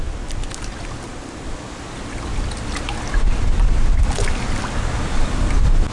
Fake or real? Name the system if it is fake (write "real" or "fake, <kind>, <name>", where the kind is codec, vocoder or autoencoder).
real